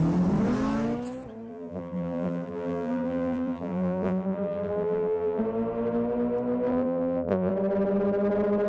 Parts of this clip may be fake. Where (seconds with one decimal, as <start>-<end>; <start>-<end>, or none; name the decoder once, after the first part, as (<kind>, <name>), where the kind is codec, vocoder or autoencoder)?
1.5-5.4 (vocoder, BigVGAN v2); 6.7-7.5